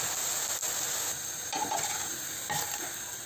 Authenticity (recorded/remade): recorded